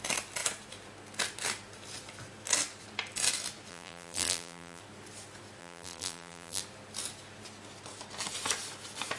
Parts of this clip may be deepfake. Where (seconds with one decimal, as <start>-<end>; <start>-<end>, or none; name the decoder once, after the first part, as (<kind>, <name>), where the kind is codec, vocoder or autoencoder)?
3.7-4.8 (vocoder, BigVGAN v2); 5.6-6.6